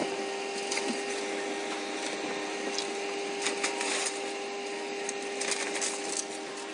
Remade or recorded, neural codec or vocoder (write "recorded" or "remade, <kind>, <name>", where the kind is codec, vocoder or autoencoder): recorded